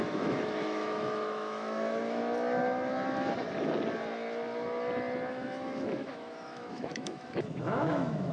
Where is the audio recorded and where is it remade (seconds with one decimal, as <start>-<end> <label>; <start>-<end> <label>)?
0.0-2.2 remade; 2.2-5.3 recorded; 5.3-8.3 remade